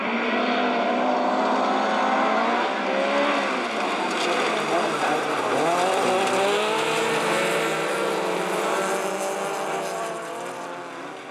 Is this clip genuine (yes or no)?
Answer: yes